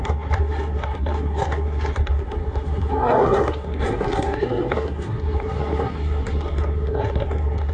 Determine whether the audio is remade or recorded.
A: remade